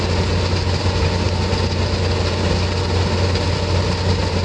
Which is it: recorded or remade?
recorded